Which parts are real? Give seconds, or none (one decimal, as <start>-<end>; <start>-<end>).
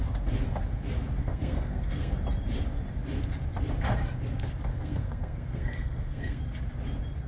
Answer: 0.0-1.2; 2.1-4.7; 6.4-7.3